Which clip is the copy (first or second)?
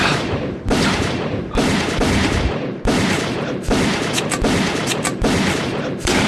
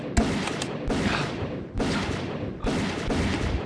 first